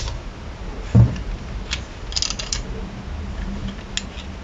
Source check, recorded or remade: recorded